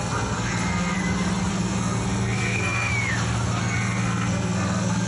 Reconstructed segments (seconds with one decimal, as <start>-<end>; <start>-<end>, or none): 0.0-1.0; 1.5-2.9; 3.6-5.1